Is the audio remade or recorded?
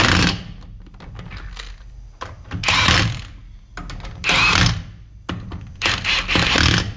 recorded